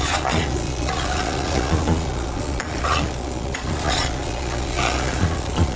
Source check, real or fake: fake